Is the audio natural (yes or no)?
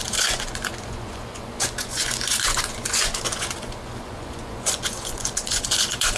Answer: no